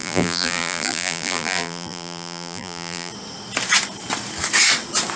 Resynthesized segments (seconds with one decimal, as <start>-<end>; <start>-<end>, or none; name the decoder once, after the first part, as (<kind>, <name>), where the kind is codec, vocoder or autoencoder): 0.0-3.1 (vocoder, BigVGAN v2)